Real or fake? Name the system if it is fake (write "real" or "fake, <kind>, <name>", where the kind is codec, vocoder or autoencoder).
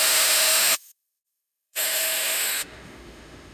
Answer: fake, autoencoder, DAC-VAE